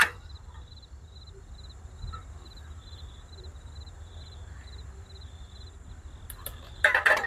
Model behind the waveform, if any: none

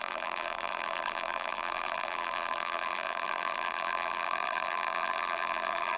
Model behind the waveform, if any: vocoder, BigVGAN v2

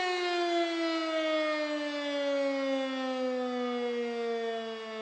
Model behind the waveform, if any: none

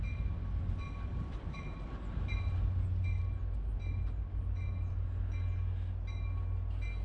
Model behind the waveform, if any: none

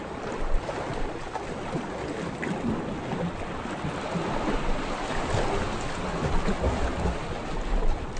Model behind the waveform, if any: none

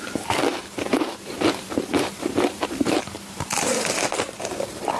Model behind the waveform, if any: vocoder, BigVGAN v2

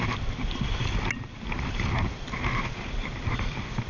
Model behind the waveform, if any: none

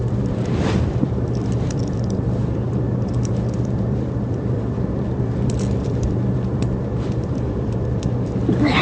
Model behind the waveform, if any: vocoder, BigVGAN v2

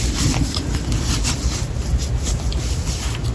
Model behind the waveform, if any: none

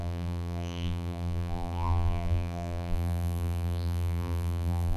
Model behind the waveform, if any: vocoder, BigVGAN v2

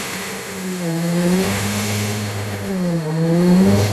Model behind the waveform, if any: autoencoder, DAC-VAE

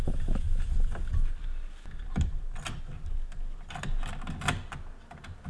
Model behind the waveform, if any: none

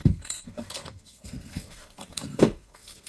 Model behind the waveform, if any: codec, SNAC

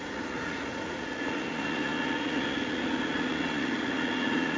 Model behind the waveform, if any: vocoder, Vocos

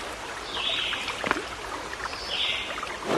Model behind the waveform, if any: none